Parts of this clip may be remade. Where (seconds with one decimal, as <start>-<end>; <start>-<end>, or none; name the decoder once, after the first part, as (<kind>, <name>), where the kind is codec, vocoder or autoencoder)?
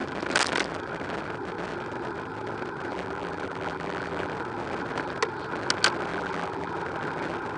2.9-4.3 (vocoder, BigVGAN v2); 6.1-6.7